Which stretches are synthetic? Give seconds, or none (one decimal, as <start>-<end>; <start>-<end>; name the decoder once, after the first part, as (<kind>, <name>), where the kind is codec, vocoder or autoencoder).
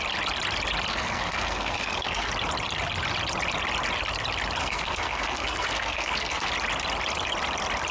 0.9-2.3 (codec, SNAC); 4.6-6.5